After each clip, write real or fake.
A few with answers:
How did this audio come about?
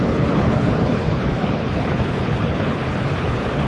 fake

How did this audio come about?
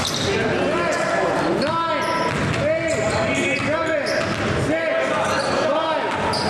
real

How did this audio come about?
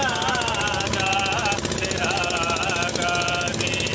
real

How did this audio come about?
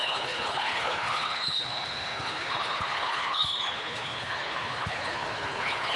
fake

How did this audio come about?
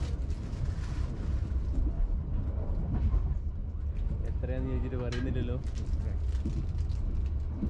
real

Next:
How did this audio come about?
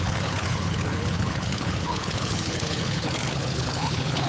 fake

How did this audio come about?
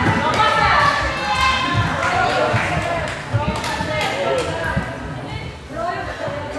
real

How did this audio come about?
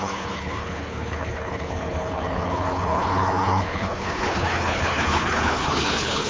fake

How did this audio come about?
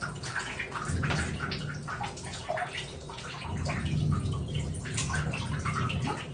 real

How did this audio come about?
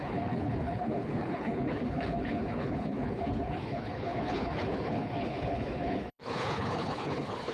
fake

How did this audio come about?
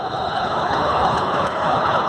fake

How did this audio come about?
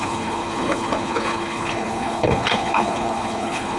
fake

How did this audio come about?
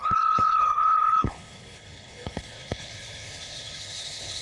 fake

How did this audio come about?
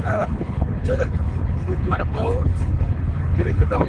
fake